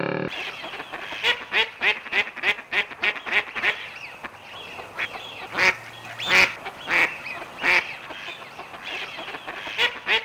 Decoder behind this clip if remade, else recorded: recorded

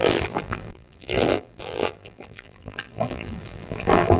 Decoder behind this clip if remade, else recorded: remade, vocoder, BigVGAN v2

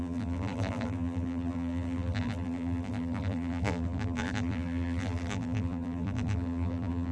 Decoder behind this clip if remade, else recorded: remade, vocoder, BigVGAN v2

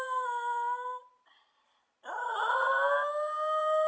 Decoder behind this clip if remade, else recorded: remade, vocoder, BigVGAN v2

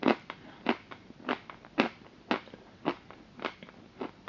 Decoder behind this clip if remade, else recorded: recorded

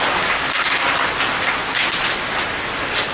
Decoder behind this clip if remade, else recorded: recorded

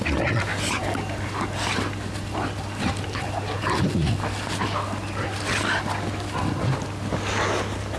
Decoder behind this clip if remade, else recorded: recorded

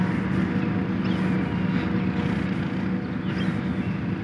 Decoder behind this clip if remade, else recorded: recorded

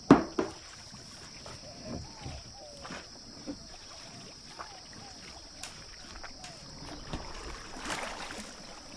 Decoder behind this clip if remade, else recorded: recorded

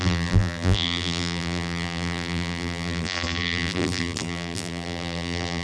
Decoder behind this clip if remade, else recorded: remade, vocoder, BigVGAN v2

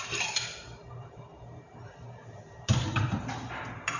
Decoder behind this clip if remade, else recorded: remade, vocoder, BigVGAN v2